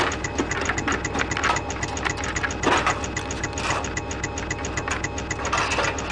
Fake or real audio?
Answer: real